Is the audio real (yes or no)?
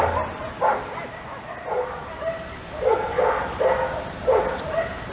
yes